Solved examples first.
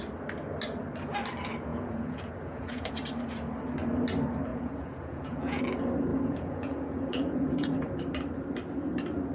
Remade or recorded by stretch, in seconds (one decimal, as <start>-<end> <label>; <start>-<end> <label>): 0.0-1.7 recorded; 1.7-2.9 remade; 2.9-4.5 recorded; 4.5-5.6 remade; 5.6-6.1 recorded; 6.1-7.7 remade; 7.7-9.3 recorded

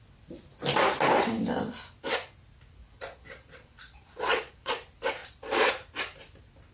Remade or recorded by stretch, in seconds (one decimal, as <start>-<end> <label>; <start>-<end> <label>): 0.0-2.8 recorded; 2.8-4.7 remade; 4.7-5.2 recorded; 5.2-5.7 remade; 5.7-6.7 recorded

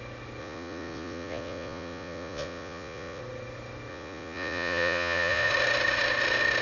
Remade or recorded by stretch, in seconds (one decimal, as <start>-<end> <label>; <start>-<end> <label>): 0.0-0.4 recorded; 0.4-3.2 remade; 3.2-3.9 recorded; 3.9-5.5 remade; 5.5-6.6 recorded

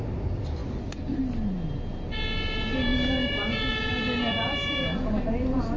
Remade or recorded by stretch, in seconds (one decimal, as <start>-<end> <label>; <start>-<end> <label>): 0.0-2.9 recorded; 2.9-5.1 remade; 5.1-5.8 recorded

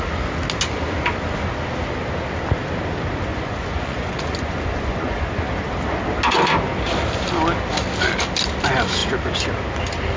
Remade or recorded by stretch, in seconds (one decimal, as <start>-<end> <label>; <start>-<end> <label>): 0.0-3.3 recorded; 3.3-5.5 remade; 5.5-10.2 recorded